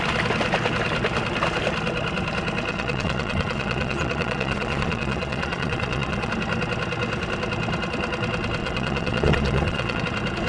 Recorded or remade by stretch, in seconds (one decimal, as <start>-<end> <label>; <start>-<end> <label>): 0.0-2.7 recorded; 2.7-6.3 remade; 6.3-8.6 recorded; 8.6-10.0 remade; 10.0-10.5 recorded